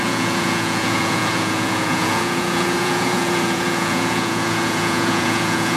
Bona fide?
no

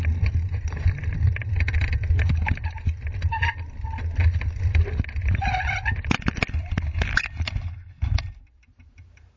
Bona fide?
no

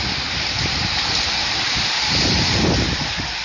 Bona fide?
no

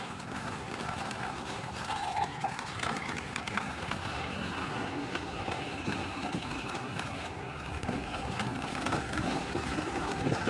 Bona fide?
no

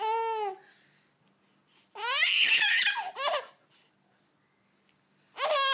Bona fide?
yes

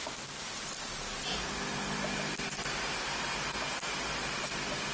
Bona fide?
yes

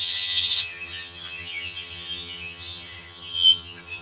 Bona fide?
no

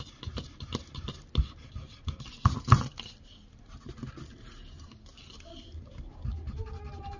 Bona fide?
yes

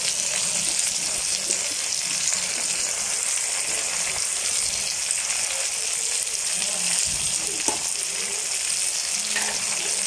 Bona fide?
yes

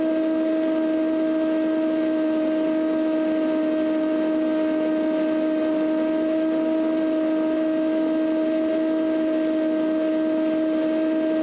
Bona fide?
yes